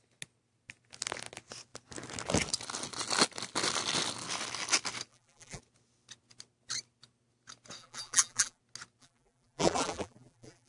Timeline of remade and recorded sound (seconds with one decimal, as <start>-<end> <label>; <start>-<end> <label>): 0.0-5.1 recorded; 5.1-5.6 remade; 5.6-7.8 recorded; 7.8-8.6 remade; 8.6-9.0 recorded; 9.0-10.7 remade